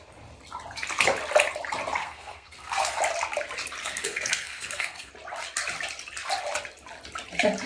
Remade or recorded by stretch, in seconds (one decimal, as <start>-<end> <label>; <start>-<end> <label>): 0.0-2.0 recorded; 2.0-3.0 remade; 3.0-3.8 recorded; 3.8-5.1 remade; 5.1-7.7 recorded